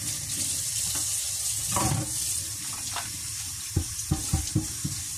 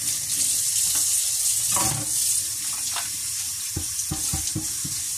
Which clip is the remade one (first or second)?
first